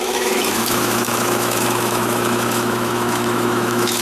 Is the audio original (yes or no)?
no